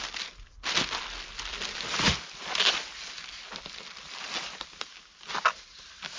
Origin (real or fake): real